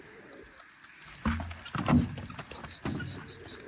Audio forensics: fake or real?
real